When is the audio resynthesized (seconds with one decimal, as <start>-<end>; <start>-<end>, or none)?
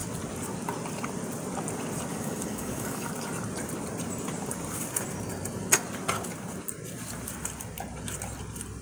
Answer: 2.1-3.1